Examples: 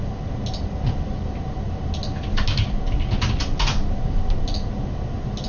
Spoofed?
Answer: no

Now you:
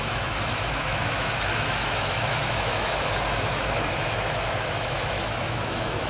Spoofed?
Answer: yes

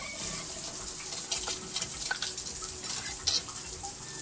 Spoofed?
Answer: no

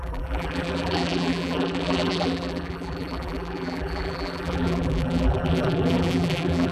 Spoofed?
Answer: yes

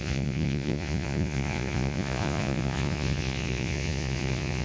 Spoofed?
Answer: yes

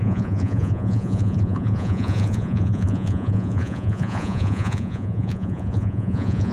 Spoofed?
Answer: yes